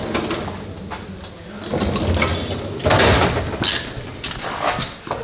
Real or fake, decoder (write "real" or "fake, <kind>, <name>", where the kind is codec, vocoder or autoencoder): real